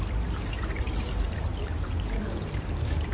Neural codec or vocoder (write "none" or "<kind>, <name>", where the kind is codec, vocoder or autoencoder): none